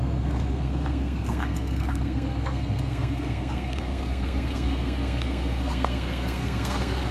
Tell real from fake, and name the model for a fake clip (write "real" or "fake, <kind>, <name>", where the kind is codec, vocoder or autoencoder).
fake, codec, SNAC